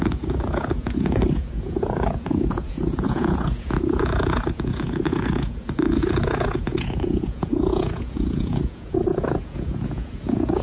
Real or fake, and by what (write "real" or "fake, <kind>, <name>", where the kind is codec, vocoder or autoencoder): fake, vocoder, Vocos